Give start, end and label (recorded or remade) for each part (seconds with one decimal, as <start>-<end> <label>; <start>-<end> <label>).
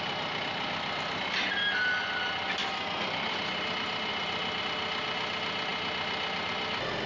0.0-7.1 recorded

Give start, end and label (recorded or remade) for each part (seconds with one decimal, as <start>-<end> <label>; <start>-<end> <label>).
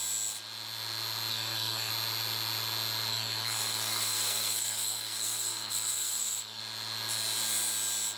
0.0-1.3 recorded; 1.3-1.9 remade; 1.9-3.1 recorded; 3.1-6.6 remade; 6.6-8.2 recorded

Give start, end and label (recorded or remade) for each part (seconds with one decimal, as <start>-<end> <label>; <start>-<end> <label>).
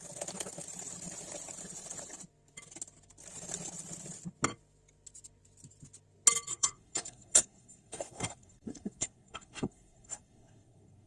0.0-6.5 recorded; 6.5-11.1 remade